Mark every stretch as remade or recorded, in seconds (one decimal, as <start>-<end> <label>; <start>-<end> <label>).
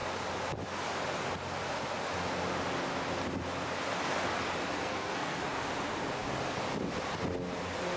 0.0-4.8 recorded; 4.8-5.4 remade; 5.4-8.0 recorded